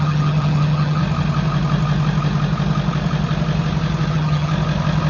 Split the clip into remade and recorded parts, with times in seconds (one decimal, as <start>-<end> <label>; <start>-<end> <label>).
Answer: 0.0-1.0 remade; 1.0-4.1 recorded; 4.1-4.5 remade; 4.5-5.1 recorded

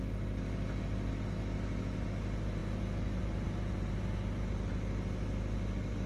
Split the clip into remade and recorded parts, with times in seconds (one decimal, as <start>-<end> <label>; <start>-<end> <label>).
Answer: 0.0-6.1 recorded

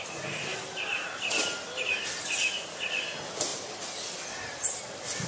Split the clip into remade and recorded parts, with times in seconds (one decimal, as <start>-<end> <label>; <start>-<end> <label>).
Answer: 0.0-5.3 recorded